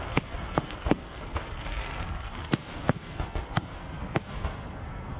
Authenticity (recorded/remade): remade